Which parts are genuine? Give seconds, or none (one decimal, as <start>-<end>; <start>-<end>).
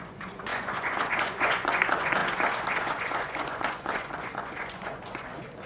none